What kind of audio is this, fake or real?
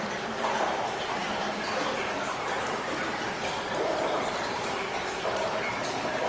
fake